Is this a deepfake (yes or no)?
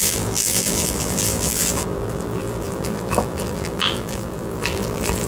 yes